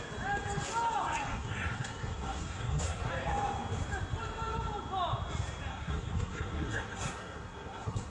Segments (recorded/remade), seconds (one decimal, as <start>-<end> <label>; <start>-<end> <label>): 0.0-1.3 recorded; 1.3-3.1 remade; 3.1-5.7 recorded; 5.7-8.1 remade